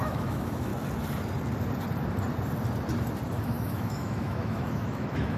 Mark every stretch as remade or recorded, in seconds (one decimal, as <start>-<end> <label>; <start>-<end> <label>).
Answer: 0.0-0.7 remade; 0.7-3.4 recorded; 3.4-5.4 remade